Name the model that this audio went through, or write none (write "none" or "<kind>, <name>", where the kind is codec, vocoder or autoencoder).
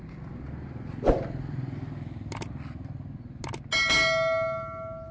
none